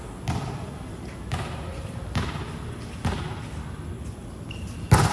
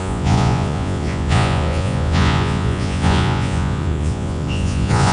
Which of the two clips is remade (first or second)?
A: second